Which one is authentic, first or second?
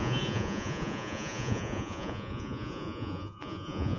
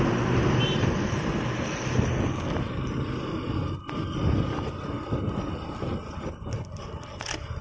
second